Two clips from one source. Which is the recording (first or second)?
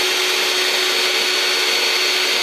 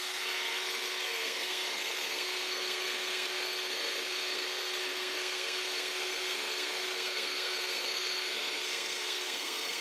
first